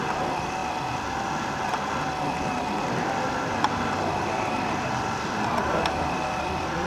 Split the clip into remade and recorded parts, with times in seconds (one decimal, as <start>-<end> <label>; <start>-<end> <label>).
0.0-0.6 remade; 0.6-4.1 recorded; 4.1-6.9 remade